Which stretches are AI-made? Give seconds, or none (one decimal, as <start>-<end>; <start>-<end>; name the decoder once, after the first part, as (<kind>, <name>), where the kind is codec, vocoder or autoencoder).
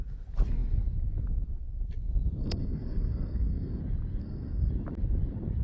2.4-3.8 (codec, SNAC); 4.2-4.7